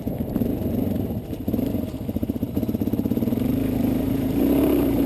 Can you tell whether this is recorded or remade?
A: remade